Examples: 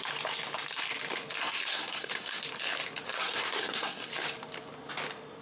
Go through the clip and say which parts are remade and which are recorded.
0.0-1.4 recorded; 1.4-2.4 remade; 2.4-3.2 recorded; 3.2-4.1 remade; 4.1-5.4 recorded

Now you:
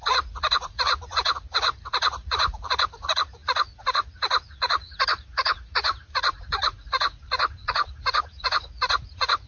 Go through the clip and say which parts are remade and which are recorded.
0.0-9.5 remade

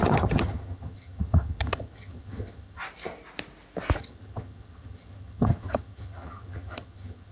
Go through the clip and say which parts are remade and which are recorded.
0.0-2.8 remade; 2.8-4.0 recorded; 4.0-7.3 remade

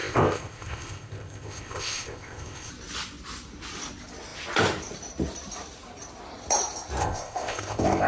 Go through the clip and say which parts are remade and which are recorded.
0.0-2.7 remade; 2.7-7.0 recorded; 7.0-8.1 remade

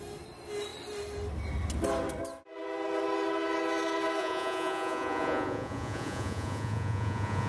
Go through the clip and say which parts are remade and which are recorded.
0.0-4.2 recorded; 4.2-7.5 remade